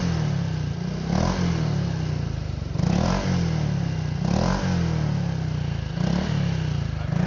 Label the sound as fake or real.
real